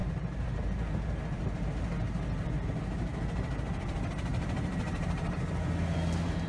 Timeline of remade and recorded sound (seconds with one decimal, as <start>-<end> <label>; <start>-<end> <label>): 0.0-1.7 remade; 1.7-4.3 recorded; 4.3-5.4 remade; 5.4-6.5 recorded